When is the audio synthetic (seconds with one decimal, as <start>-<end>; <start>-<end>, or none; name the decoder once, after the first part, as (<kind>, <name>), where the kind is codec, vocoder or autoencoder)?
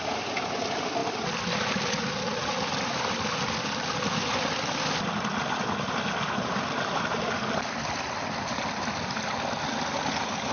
none